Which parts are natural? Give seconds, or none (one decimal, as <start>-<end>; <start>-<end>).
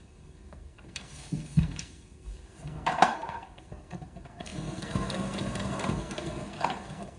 none